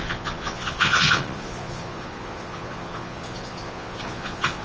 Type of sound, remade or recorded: remade